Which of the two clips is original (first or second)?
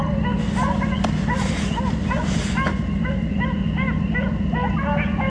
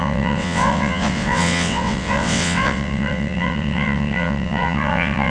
first